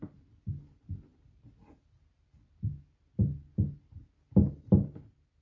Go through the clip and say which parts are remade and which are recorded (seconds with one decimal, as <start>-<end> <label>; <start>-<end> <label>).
0.0-5.4 recorded